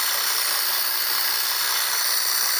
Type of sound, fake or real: real